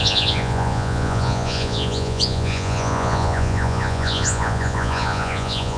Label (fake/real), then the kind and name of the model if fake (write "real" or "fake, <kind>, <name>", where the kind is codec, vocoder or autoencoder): fake, vocoder, Vocos